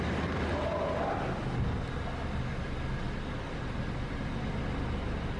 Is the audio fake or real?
real